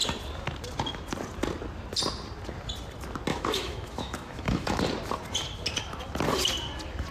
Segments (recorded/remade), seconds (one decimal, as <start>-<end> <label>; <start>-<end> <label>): 0.0-3.3 recorded; 3.3-4.8 remade; 4.8-7.1 recorded